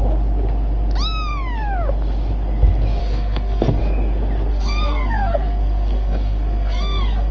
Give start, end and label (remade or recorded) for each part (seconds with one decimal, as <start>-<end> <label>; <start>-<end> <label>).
0.0-3.0 recorded; 3.0-3.8 remade; 3.8-4.5 recorded; 4.5-7.3 remade